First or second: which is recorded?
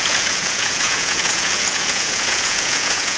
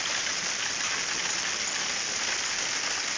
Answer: second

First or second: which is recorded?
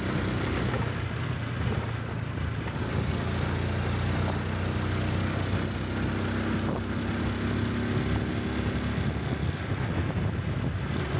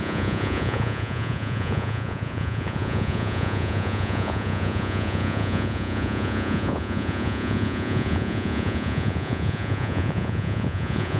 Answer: first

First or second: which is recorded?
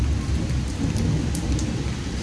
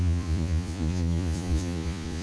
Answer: first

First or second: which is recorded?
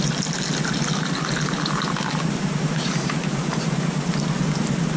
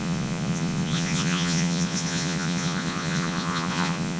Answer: first